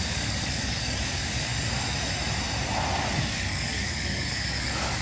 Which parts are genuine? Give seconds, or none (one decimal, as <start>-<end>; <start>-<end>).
1.5-3.2

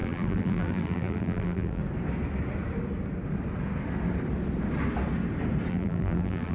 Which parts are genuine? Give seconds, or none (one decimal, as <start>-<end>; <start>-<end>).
1.8-5.7